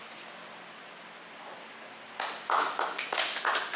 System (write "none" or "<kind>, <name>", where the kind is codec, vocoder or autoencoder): none